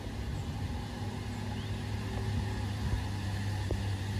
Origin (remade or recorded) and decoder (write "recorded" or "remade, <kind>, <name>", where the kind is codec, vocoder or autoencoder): recorded